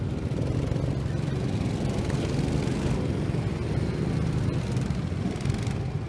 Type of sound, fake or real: real